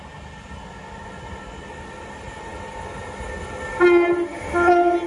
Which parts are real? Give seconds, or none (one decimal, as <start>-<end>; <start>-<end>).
0.0-5.1